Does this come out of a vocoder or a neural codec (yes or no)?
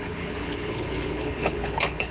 yes